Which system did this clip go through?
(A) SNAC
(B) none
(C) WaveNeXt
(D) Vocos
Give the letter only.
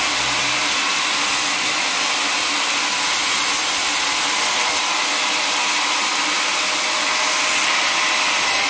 B